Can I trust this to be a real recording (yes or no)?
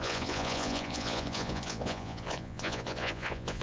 no